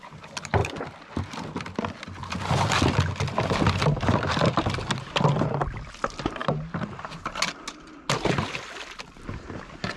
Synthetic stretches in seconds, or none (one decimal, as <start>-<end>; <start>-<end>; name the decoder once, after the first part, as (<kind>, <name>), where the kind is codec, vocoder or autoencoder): none